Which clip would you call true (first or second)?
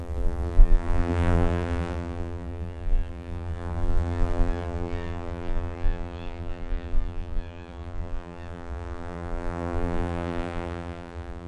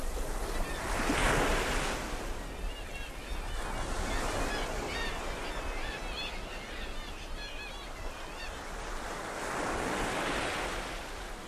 second